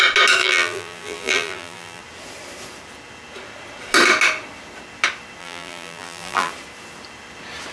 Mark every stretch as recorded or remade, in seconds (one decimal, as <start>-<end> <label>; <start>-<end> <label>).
0.0-0.4 recorded; 0.4-2.0 remade; 2.0-5.4 recorded; 5.4-6.5 remade; 6.5-7.7 recorded